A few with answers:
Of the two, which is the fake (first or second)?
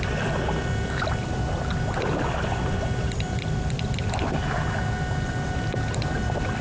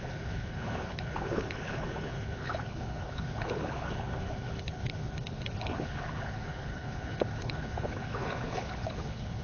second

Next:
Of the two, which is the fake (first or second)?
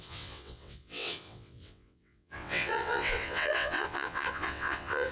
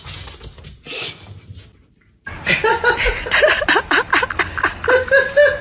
first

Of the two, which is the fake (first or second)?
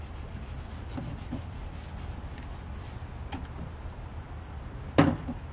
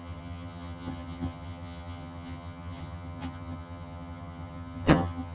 second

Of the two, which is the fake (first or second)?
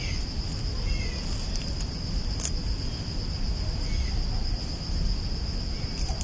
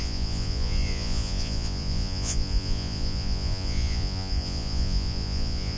second